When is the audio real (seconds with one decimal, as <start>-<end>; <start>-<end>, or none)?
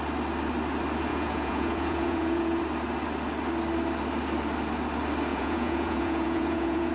0.0-1.1; 2.6-5.3